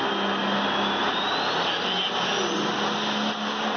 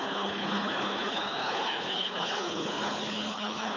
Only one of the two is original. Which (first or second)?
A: first